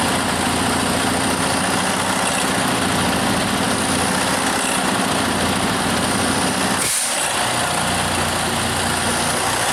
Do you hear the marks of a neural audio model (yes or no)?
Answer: no